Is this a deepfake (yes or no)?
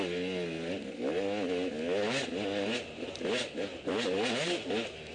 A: no